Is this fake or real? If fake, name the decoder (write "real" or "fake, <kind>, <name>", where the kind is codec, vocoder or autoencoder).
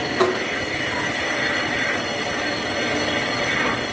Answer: real